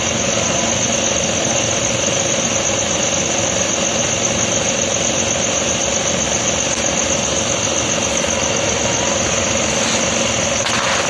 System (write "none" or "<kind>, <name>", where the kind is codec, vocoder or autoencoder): none